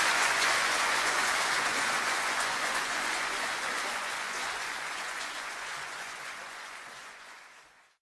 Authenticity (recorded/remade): remade